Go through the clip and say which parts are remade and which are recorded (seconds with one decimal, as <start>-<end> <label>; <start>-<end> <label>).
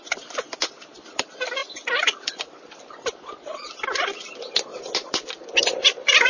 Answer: 0.0-4.7 remade; 4.7-5.6 recorded; 5.6-6.3 remade